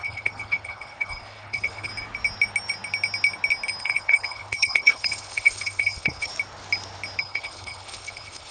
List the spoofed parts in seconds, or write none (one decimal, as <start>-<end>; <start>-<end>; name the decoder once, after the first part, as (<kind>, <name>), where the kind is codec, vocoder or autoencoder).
0.0-1.9 (codec, HILCodec); 3.8-6.3; 7.2-8.5